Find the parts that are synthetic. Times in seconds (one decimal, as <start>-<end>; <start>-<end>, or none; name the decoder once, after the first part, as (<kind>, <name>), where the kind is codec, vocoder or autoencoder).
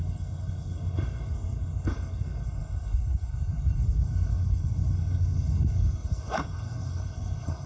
0.0-7.7 (codec, SNAC)